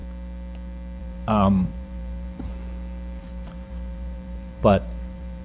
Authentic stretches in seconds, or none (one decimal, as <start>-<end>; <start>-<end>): 0.0-1.0; 2.5-3.2